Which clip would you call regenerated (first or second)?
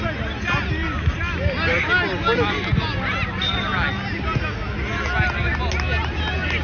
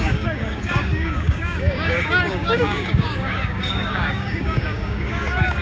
second